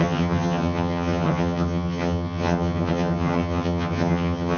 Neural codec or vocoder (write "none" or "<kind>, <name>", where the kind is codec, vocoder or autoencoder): vocoder, HiFi-GAN